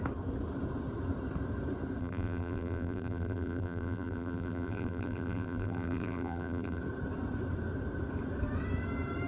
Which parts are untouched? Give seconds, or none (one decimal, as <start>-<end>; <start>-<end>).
0.0-2.0; 6.8-9.3